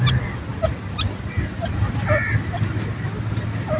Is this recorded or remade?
recorded